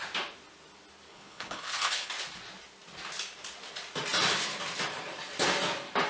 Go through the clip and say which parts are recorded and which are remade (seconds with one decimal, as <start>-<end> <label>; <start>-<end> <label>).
0.0-1.1 recorded; 1.1-2.1 remade; 2.1-6.1 recorded